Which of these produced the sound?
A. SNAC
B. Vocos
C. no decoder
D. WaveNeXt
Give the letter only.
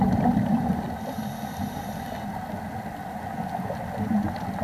C